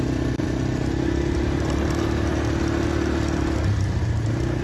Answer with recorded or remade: recorded